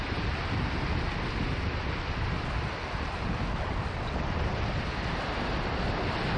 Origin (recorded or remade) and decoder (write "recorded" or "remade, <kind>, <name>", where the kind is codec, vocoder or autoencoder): recorded